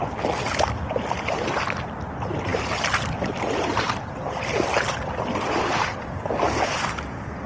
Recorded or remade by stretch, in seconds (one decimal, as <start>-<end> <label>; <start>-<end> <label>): 0.0-7.5 recorded